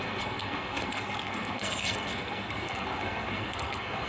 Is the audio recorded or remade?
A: remade